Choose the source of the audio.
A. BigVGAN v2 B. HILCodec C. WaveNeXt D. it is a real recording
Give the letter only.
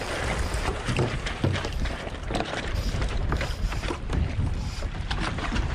A